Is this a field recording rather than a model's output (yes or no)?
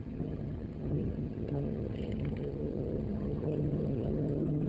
no